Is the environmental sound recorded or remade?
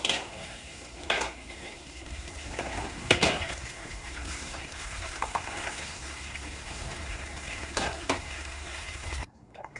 remade